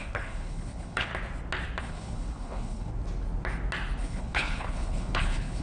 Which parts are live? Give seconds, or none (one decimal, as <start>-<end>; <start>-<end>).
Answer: 1.1-1.8; 2.9-4.0